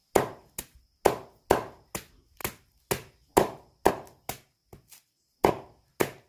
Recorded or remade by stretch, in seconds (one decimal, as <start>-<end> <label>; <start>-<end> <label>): 0.0-6.3 recorded